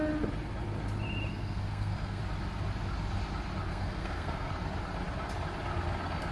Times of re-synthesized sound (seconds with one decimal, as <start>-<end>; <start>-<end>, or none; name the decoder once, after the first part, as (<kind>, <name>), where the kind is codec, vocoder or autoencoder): 1.3-2.2 (codec, SNAC); 3.7-4.5